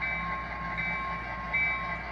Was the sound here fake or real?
real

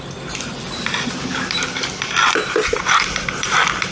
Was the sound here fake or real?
fake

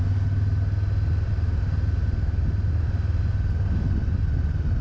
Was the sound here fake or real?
real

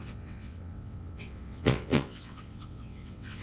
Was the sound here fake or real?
fake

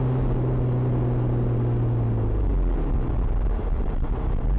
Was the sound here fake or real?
real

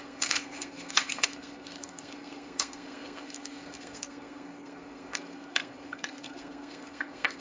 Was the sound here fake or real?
fake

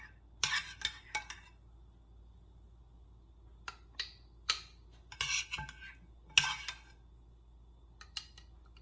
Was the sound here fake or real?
real